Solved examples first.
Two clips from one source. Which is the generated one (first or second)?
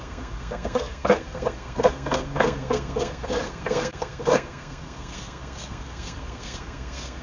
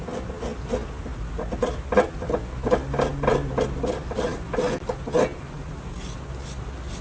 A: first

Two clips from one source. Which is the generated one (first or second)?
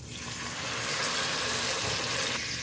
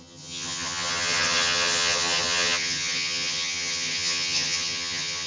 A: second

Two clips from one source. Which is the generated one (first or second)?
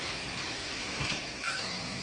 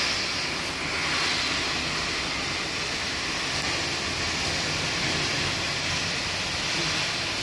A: first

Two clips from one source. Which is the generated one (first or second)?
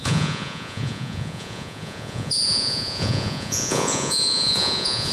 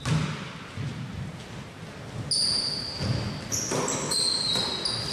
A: first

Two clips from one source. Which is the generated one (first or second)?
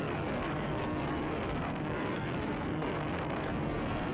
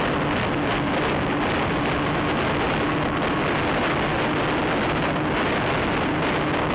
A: first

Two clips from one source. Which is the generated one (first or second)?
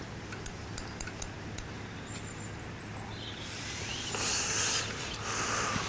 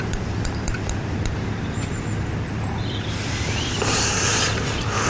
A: second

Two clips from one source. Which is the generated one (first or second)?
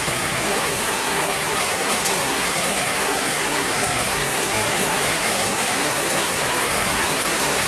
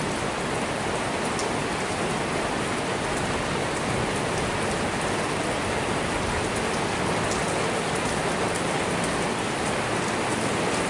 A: first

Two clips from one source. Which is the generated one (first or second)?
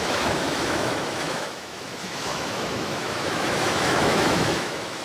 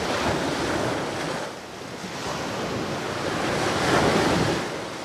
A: first